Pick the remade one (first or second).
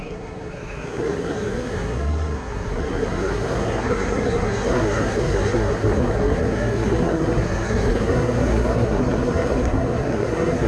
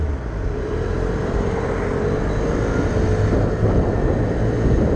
first